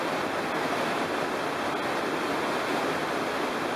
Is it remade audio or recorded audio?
recorded